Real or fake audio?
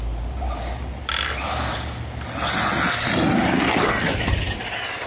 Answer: real